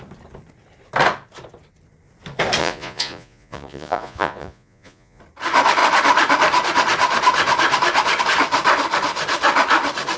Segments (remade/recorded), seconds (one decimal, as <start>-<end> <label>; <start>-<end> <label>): 0.0-2.6 recorded; 2.6-5.2 remade; 5.2-10.2 recorded